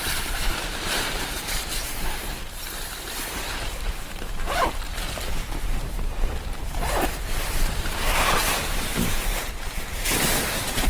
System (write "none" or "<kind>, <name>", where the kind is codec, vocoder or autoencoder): vocoder, BigVGAN v2